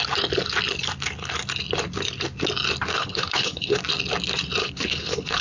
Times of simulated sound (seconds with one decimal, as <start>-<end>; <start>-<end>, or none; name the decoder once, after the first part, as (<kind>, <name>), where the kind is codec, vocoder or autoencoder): 2.9-3.8 (codec, HILCodec); 4.6-5.4